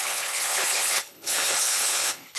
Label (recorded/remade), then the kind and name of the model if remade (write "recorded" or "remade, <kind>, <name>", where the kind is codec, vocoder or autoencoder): remade, codec, HILCodec